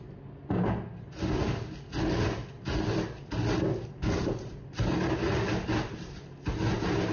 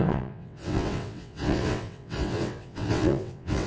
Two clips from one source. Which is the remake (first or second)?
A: second